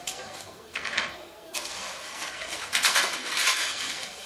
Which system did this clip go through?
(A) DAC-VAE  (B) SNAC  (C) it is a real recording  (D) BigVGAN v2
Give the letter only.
B